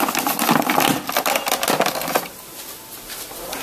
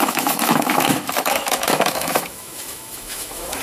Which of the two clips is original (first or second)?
first